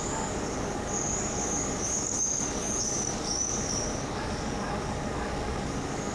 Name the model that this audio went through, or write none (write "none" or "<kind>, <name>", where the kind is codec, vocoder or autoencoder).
codec, DAC